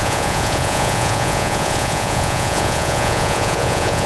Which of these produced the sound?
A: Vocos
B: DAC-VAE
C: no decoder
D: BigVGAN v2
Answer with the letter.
A